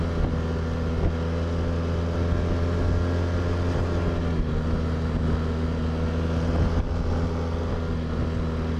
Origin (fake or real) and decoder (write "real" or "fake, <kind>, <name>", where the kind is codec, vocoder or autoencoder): real